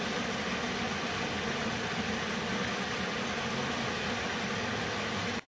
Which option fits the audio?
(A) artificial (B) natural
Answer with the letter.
B